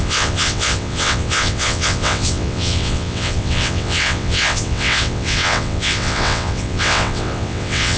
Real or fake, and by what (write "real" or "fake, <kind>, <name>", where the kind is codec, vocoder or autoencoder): fake, vocoder, WaveNeXt